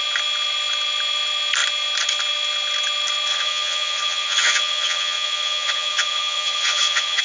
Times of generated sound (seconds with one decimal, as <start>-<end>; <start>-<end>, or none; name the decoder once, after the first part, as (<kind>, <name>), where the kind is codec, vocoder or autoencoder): 3.3-7.2 (vocoder, HiFi-GAN)